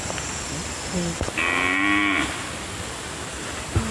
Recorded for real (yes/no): yes